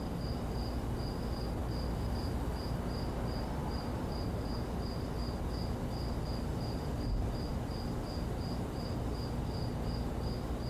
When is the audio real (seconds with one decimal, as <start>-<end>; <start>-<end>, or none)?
0.0-3.6; 4.5-10.7